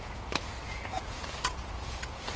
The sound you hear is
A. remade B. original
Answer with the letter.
A